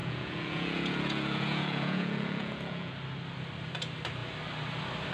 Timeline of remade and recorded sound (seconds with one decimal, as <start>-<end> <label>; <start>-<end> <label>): 0.0-2.9 remade; 2.9-5.1 recorded